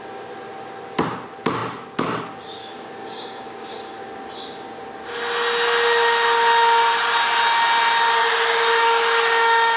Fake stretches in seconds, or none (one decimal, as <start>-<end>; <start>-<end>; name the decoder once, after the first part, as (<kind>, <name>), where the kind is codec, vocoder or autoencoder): 2.6-4.0 (codec, DAC); 8.2-9.8

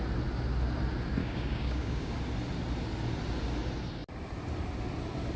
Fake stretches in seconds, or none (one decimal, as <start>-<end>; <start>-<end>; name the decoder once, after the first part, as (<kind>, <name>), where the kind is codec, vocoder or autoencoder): 1.2-2.1 (codec, DAC)